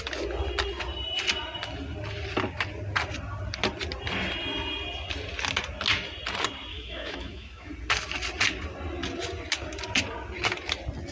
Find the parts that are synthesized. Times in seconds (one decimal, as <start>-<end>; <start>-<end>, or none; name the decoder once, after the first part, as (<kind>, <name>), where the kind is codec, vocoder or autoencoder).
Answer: 6.7-7.7 (autoencoder, DAC-VAE)

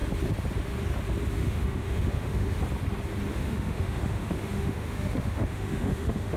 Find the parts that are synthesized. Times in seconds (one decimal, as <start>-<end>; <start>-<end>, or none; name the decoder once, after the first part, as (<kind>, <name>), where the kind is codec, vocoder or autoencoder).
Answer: 1.4-2.6 (autoencoder, DAC-VAE); 3.3-6.4

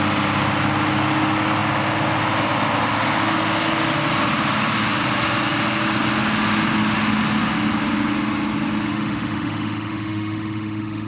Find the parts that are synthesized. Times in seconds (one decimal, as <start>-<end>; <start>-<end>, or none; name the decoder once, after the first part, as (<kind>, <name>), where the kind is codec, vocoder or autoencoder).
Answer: 8.9-11.1 (autoencoder, DAC-VAE)

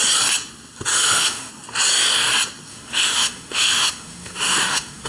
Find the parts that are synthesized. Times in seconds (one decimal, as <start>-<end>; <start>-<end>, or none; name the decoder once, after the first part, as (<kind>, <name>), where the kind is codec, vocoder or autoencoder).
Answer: 0.9-1.5 (autoencoder, DAC-VAE); 2.7-5.1

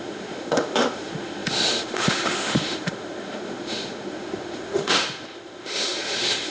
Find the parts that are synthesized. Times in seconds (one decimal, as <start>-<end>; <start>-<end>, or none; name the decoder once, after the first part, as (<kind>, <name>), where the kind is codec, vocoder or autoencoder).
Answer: 0.0-6.5 (autoencoder, DAC-VAE)

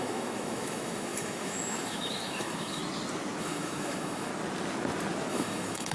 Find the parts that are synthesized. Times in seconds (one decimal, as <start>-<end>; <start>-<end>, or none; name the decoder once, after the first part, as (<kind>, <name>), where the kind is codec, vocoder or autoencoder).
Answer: 0.0-2.8 (autoencoder, DAC-VAE); 3.4-4.3; 5.3-5.9

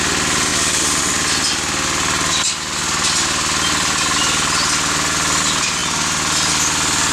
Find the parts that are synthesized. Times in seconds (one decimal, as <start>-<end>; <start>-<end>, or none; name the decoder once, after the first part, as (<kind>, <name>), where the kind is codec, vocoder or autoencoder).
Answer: none

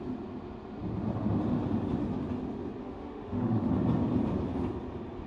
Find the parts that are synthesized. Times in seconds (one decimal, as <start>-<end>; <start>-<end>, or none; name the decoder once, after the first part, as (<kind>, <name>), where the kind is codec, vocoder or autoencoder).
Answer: 2.8-3.7 (autoencoder, DAC-VAE)